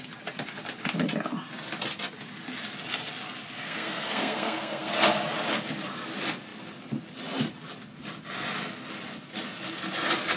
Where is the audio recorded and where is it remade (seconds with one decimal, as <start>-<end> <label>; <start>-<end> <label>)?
0.0-3.6 recorded; 3.6-4.9 remade; 4.9-10.4 recorded